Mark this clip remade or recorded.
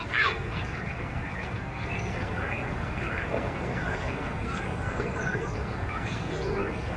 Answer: remade